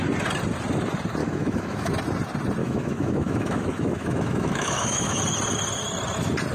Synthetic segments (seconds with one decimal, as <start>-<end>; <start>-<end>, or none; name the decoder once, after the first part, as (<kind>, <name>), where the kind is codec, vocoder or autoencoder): 1.2-1.9 (autoencoder, DAC-VAE); 2.6-5.2